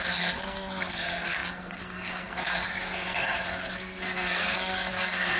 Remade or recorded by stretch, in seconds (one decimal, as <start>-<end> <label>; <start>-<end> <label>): 0.0-5.4 remade